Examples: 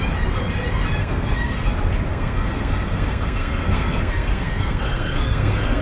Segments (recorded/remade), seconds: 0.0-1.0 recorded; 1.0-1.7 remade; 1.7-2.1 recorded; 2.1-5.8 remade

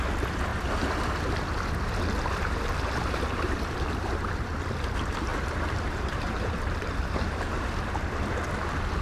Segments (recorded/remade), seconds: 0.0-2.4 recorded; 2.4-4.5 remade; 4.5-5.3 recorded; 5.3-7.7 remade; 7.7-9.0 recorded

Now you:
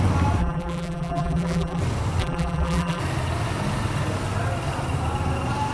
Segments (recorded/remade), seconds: 0.0-0.4 recorded; 0.4-1.8 remade; 1.8-2.2 recorded; 2.2-3.0 remade; 3.0-5.7 recorded

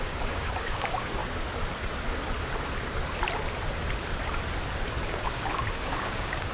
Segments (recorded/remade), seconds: 0.0-1.2 remade; 1.2-5.1 recorded; 5.1-6.5 remade

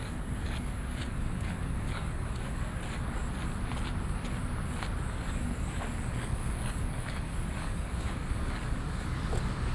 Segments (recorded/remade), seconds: 0.0-3.2 remade; 3.2-5.1 recorded; 5.1-9.7 remade